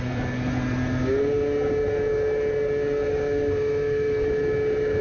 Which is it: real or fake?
real